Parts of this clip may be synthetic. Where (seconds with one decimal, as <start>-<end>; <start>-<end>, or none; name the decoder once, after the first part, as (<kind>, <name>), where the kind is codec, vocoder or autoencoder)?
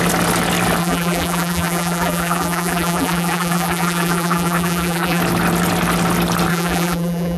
0.8-5.2 (vocoder, BigVGAN v2); 6.5-7.4